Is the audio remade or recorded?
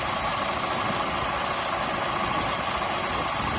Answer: recorded